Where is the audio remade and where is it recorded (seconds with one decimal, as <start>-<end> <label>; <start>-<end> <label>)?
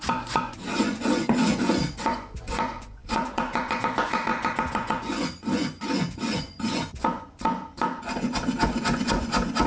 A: 0.0-9.7 remade